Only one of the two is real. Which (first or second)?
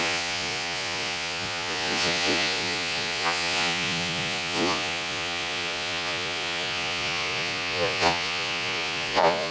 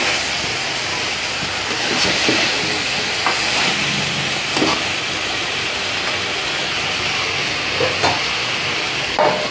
second